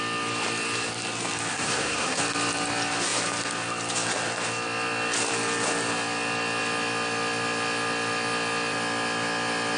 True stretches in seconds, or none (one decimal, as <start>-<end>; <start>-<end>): 0.0-1.5; 2.2-9.8